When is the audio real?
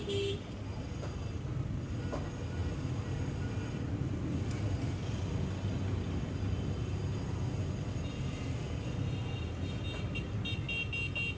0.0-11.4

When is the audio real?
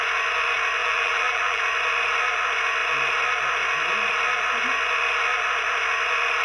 0.0-0.8; 1.6-6.4